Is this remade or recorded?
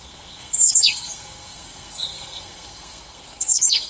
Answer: remade